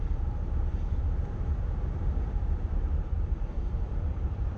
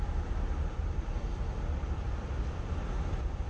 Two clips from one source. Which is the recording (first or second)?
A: second